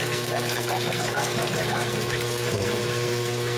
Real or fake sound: fake